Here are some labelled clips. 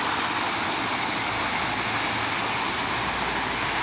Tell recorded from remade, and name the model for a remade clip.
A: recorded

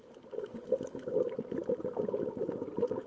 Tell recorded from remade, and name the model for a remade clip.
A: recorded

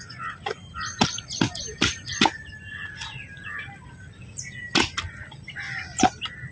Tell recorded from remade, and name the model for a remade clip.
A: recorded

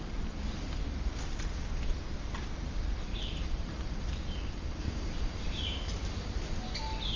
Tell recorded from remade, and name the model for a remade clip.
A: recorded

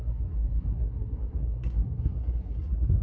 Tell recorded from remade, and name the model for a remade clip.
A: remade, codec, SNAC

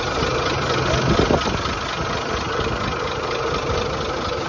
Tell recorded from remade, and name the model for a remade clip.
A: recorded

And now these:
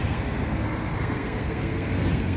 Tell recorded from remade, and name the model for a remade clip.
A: remade, codec, SNAC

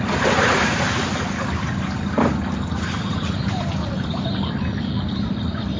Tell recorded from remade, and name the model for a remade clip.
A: recorded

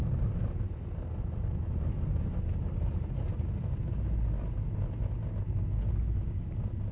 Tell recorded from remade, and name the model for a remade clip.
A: recorded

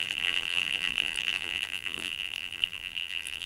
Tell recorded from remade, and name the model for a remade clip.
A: remade, vocoder, BigVGAN v2